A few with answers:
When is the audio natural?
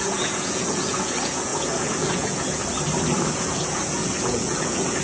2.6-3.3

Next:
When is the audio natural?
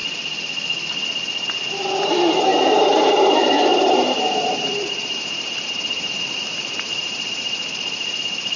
0.0-2.5; 3.1-3.7; 6.2-8.6